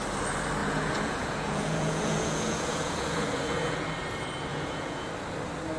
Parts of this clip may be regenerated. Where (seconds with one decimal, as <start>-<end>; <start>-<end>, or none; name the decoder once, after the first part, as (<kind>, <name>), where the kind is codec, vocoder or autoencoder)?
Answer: 0.6-3.9 (vocoder, Vocos); 4.5-5.1